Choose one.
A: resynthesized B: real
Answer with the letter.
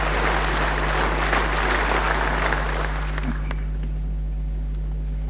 B